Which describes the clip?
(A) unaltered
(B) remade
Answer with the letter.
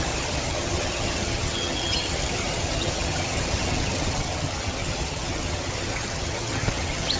B